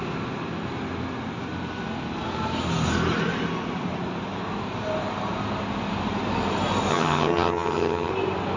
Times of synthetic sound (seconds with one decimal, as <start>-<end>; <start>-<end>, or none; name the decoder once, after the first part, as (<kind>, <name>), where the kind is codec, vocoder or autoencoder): 6.9-8.1 (vocoder, HiFi-GAN)